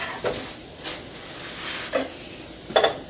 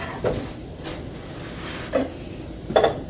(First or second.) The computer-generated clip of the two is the second